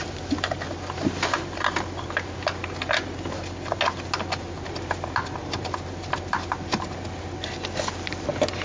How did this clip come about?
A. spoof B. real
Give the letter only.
B